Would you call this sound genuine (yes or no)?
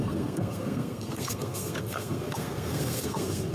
no